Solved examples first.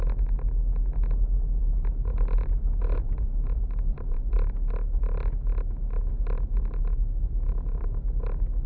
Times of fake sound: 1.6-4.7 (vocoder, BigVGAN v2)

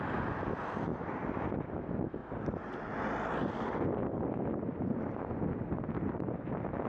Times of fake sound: 0.9-1.8 (vocoder, BigVGAN v2)

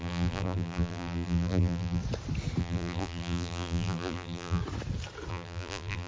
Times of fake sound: 0.0-2.0 (vocoder, BigVGAN v2); 2.6-4.6; 5.3-6.1

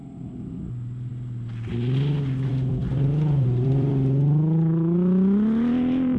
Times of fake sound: 2.9-3.9 (vocoder, BigVGAN v2)

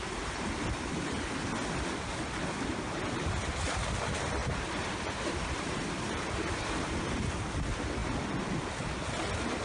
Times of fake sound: 4.4-7.3 (vocoder, BigVGAN v2)